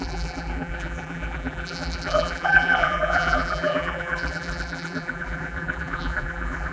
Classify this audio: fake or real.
fake